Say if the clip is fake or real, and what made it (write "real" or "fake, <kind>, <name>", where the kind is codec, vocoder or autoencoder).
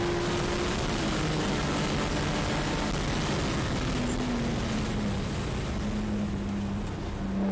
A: real